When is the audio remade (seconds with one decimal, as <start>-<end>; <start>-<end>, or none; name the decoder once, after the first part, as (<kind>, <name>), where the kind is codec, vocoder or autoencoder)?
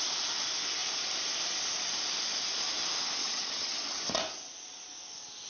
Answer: 3.2-4.0 (vocoder, HiFi-GAN)